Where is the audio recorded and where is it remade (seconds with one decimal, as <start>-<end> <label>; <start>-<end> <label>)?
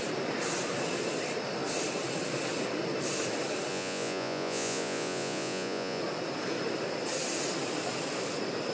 0.0-3.7 recorded; 3.7-6.0 remade; 6.0-8.7 recorded